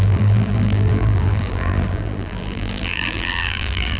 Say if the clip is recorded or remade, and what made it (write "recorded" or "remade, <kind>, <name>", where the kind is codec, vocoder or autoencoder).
remade, vocoder, BigVGAN v2